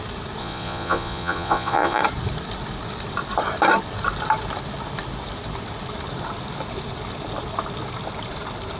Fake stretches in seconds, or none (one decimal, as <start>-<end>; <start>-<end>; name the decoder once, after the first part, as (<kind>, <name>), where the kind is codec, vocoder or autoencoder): 0.4-2.0 (vocoder, Vocos)